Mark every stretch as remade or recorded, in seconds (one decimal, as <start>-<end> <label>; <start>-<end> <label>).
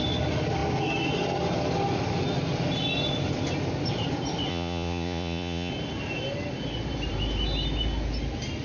0.0-4.5 recorded; 4.5-5.7 remade; 5.7-8.6 recorded